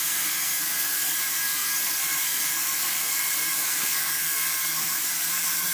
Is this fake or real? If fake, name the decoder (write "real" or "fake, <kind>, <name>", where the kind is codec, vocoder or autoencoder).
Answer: fake, codec, SNAC